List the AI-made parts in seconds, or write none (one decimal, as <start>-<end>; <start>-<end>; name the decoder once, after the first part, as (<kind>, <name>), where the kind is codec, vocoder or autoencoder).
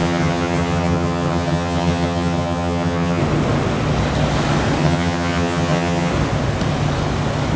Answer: 0.0-3.2 (vocoder, HiFi-GAN); 4.8-6.1